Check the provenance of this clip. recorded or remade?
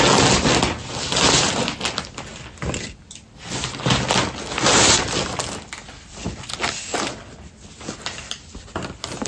recorded